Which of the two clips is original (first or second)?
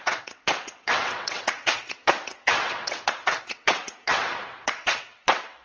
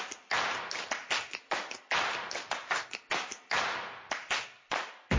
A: second